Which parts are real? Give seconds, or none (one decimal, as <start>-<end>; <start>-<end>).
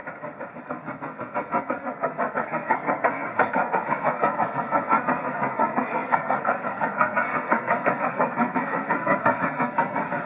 0.0-0.6